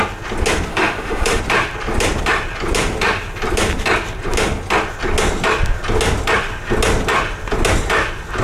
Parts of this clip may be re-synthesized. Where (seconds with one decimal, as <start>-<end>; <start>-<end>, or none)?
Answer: 0.7-1.4